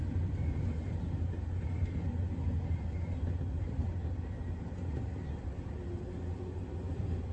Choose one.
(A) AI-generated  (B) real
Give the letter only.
B